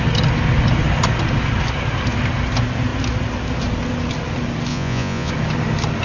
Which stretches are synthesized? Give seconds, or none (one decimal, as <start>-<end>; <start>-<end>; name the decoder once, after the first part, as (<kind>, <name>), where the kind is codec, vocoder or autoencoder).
4.7-5.3 (vocoder, Vocos)